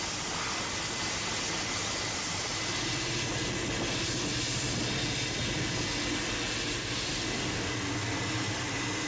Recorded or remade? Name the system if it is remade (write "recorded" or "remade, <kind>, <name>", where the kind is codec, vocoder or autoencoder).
recorded